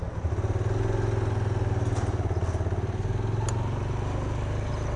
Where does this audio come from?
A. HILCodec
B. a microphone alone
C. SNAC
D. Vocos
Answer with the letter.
B